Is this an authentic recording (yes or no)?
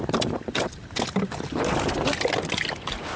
yes